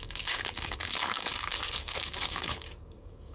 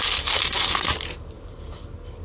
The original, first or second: second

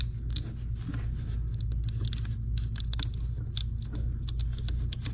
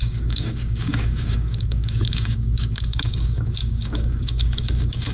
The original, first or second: first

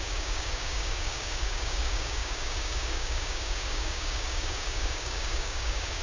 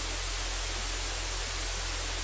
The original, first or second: second